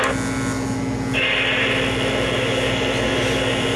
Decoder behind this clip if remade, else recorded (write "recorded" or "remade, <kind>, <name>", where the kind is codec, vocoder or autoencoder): recorded